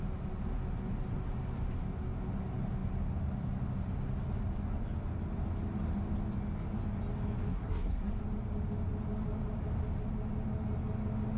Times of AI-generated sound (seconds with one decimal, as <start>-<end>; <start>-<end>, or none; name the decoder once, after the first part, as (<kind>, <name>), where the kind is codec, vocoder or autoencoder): 7.5-8.1 (codec, SNAC)